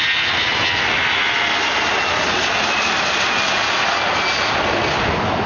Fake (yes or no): no